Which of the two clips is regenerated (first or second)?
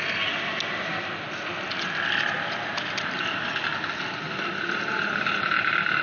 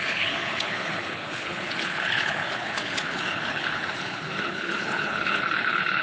second